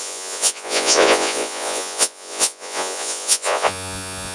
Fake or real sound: fake